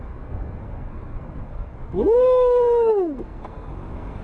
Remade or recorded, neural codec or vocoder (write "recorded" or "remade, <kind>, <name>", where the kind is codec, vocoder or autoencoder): remade, codec, SNAC